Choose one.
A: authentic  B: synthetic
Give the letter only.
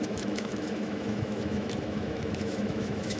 B